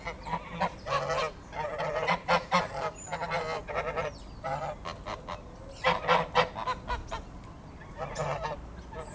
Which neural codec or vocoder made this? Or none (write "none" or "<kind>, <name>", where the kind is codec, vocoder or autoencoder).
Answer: none